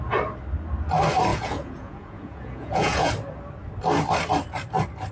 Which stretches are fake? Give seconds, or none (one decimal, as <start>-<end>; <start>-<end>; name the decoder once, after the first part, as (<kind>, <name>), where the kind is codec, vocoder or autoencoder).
1.3-3.1 (vocoder, Vocos)